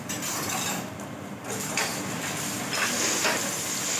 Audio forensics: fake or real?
real